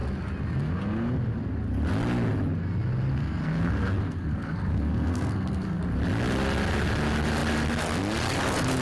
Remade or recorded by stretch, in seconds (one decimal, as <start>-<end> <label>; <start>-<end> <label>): 0.0-3.1 recorded; 3.1-5.8 remade; 5.8-8.8 recorded